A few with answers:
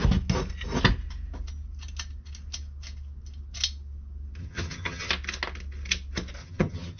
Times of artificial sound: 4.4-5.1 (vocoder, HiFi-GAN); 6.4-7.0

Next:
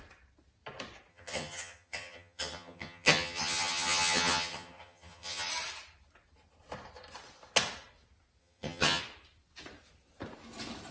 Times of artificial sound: 1.1-5.5 (vocoder, HiFi-GAN); 8.4-9.0